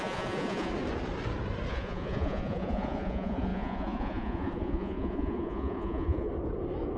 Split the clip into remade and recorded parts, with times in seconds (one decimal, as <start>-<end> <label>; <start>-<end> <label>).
0.0-0.7 remade; 0.7-1.7 recorded; 1.7-6.3 remade; 6.3-7.0 recorded